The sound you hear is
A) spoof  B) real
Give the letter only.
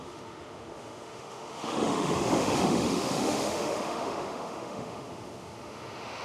A